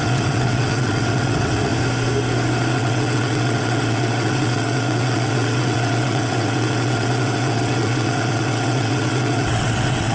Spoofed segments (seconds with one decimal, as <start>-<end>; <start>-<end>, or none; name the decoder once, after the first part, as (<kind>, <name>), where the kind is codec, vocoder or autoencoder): 0.0-1.7 (vocoder, WaveNeXt); 2.7-10.1